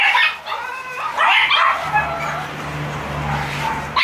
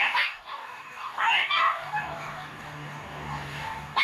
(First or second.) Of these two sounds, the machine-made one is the second